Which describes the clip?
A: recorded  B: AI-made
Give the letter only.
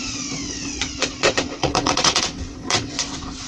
B